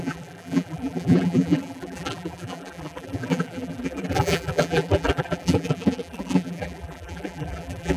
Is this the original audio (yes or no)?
no